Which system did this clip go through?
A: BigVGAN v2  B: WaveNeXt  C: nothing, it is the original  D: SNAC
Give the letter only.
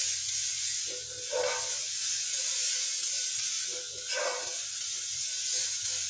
C